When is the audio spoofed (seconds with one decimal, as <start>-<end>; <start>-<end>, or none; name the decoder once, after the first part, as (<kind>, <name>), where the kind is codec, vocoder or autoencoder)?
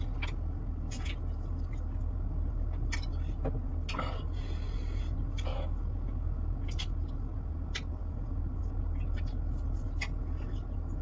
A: none